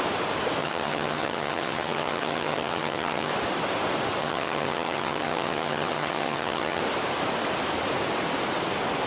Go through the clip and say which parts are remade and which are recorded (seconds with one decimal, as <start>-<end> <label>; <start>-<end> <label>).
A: 0.0-0.6 recorded; 0.6-3.3 remade; 3.3-4.2 recorded; 4.2-6.8 remade; 6.8-9.1 recorded